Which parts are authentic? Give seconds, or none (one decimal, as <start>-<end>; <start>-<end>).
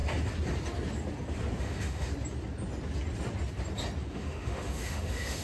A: 0.0-1.6; 2.1-4.1